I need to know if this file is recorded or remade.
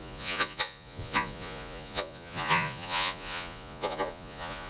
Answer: remade